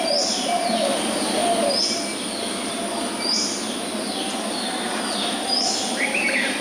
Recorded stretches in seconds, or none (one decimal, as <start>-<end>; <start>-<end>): 1.4-5.4